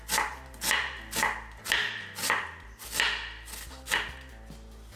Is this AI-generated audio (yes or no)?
no